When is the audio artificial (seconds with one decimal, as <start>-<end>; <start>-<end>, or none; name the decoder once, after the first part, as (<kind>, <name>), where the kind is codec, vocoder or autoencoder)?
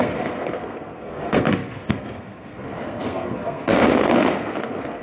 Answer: 0.0-5.0 (codec, SNAC)